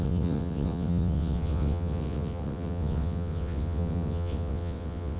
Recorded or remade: remade